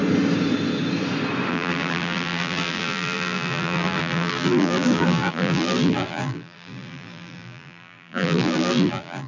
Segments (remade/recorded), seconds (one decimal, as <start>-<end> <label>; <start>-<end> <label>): 0.0-1.5 recorded; 1.5-9.3 remade